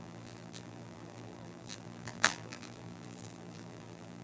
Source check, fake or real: fake